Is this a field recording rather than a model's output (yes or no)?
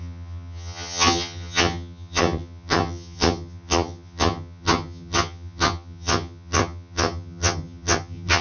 no